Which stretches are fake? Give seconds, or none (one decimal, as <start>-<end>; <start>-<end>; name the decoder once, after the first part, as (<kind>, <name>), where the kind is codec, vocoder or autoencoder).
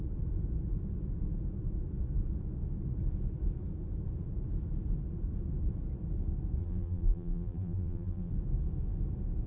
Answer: 6.6-8.3 (vocoder, BigVGAN v2)